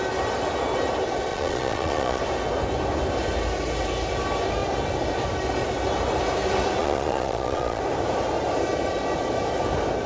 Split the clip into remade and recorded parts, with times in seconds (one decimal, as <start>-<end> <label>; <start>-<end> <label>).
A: 0.0-1.3 recorded; 1.3-2.2 remade; 2.2-6.8 recorded; 6.8-7.8 remade; 7.8-10.1 recorded